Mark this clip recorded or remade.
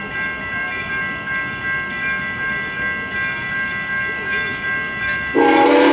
recorded